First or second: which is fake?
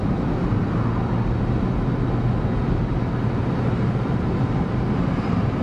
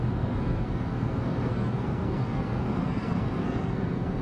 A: second